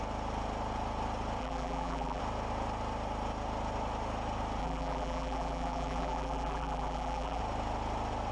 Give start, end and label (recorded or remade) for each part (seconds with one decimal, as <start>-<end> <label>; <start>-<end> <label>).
0.0-1.4 recorded; 1.4-2.2 remade; 2.2-4.6 recorded; 4.6-7.4 remade; 7.4-8.3 recorded